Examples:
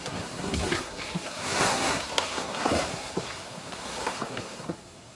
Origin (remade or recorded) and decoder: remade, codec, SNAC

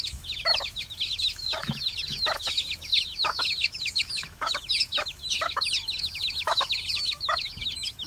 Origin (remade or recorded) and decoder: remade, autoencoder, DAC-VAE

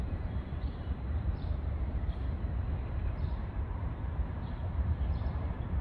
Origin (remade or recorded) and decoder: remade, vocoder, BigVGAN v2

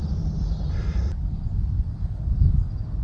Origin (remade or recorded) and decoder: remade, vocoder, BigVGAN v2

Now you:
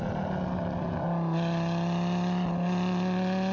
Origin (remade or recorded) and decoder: recorded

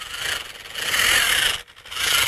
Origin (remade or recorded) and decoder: recorded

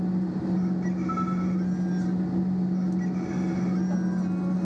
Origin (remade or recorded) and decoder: recorded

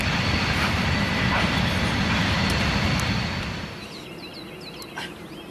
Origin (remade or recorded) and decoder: recorded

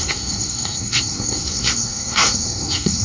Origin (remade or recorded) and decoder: remade, codec, SNAC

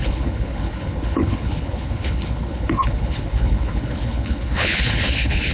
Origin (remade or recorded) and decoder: remade, codec, HILCodec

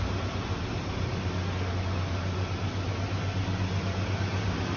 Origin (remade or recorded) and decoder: recorded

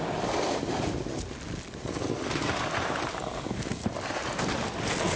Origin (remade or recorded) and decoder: recorded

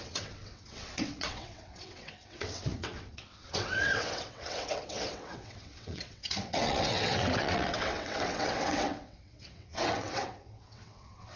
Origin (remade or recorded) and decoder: remade, vocoder, WaveNeXt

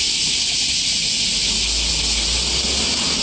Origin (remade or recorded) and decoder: recorded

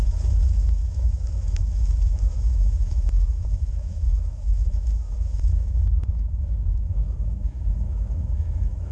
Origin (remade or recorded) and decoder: remade, autoencoder, DAC-VAE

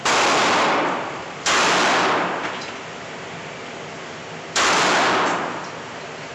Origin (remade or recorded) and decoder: recorded